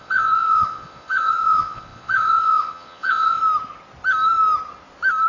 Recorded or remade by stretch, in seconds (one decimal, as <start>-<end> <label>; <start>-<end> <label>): 0.0-3.4 remade; 3.4-5.3 recorded